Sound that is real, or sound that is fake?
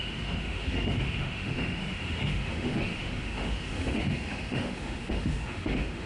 fake